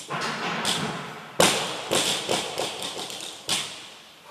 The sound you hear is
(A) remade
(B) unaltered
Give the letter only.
B